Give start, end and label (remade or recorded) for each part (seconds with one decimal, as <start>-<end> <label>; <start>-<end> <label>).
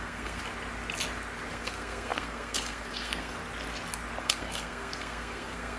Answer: 0.0-0.4 remade; 0.4-1.5 recorded; 1.5-3.4 remade; 3.4-4.2 recorded; 4.2-5.8 remade